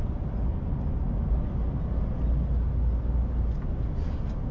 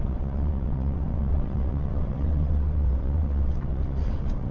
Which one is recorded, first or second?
first